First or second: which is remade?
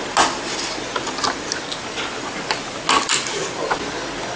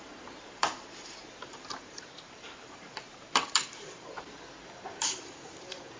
second